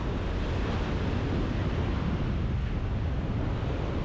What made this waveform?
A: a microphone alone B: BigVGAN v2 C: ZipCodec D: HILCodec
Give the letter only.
A